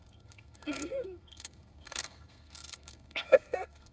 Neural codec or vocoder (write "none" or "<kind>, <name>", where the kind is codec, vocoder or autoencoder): codec, SNAC